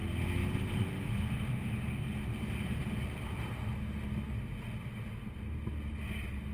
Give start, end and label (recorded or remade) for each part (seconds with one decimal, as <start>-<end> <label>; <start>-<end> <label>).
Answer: 0.0-0.4 recorded; 0.4-0.9 remade; 0.9-6.5 recorded